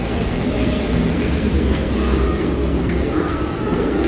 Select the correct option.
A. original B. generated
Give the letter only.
B